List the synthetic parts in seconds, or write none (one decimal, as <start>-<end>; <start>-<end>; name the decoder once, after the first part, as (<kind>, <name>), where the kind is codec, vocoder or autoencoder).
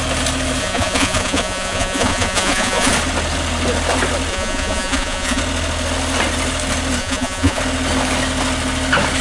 0.6-2.9 (vocoder, Vocos); 4.3-5.4; 7.0-7.6